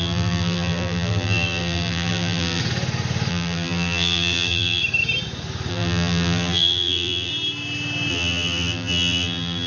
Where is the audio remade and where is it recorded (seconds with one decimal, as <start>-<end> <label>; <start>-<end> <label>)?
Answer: 0.0-2.6 remade; 2.6-3.3 recorded; 3.3-4.8 remade; 4.8-5.7 recorded; 5.7-7.3 remade; 7.3-8.1 recorded; 8.1-9.7 remade